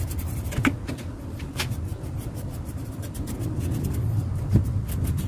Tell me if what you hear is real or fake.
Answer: real